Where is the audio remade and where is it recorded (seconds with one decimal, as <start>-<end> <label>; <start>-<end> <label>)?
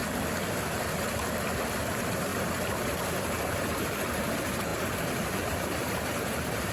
0.0-1.9 recorded; 1.9-2.3 remade; 2.3-3.4 recorded; 3.4-6.7 remade